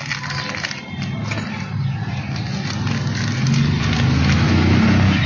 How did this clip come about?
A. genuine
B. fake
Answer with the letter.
A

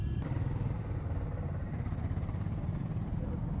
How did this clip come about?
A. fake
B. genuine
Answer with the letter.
A